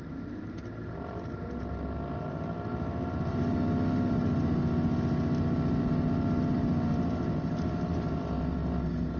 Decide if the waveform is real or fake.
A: real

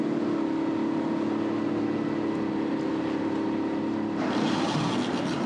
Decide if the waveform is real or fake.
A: real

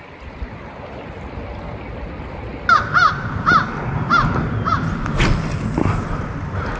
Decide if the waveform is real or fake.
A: real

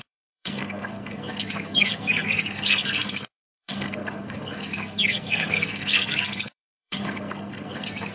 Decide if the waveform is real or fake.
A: fake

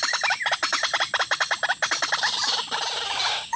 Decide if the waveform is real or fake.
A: fake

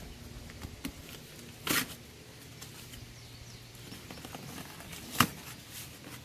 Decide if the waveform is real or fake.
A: real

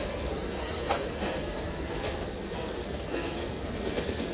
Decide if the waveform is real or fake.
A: fake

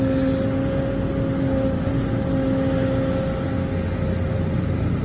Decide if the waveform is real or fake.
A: real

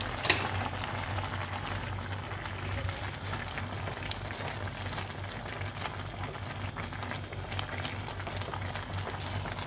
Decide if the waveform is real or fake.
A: real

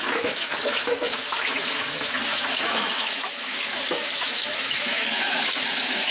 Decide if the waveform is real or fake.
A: fake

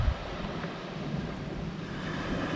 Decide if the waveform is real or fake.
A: real